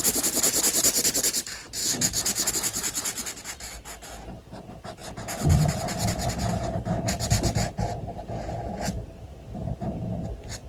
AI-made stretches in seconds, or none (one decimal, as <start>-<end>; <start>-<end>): 1.8-2.5